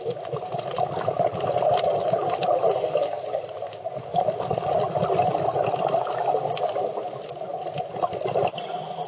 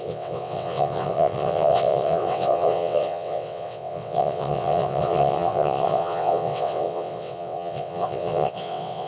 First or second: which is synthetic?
second